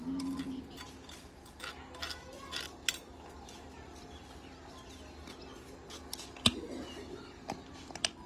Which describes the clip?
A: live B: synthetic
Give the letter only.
A